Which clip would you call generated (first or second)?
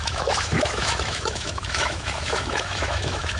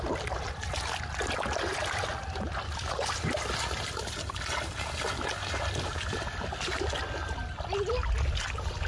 first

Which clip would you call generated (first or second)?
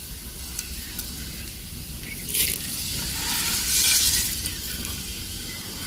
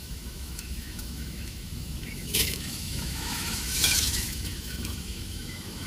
second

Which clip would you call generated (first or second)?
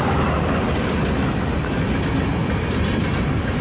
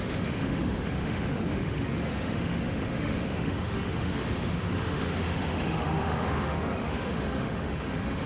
second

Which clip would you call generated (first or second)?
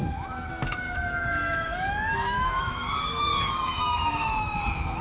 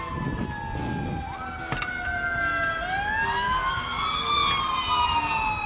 first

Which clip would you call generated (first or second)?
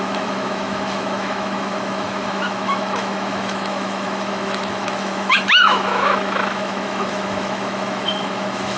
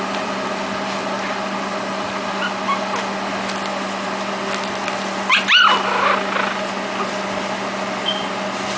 first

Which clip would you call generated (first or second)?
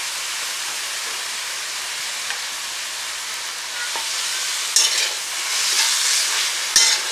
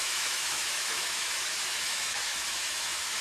second